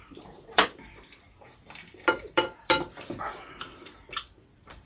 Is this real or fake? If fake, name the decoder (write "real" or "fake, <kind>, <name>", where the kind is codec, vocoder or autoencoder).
fake, vocoder, BigVGAN v2